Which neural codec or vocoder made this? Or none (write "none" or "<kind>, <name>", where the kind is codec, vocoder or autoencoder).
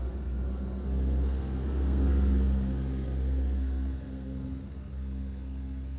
codec, SNAC